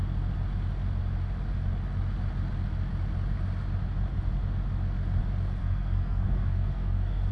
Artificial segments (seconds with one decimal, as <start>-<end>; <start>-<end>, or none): 5.6-7.3